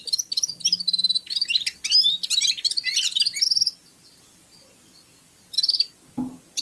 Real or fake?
real